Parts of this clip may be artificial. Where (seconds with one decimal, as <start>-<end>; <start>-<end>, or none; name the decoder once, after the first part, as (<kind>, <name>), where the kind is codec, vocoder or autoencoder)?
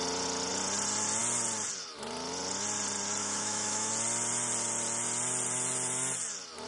3.2-3.9 (autoencoder, DAC-VAE)